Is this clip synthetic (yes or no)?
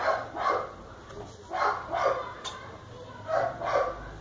no